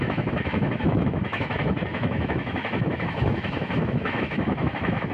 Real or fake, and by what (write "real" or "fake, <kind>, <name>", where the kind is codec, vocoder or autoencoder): fake, autoencoder, DAC-VAE